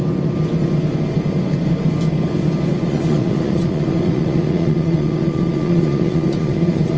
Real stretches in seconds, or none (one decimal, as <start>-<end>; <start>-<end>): 0.0-2.8